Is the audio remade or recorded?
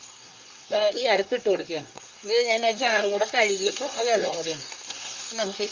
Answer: remade